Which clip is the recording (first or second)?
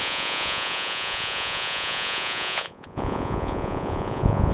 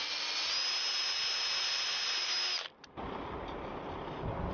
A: second